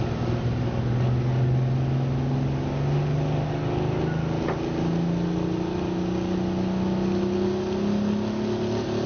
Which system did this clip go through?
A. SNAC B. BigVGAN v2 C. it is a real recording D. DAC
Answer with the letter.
C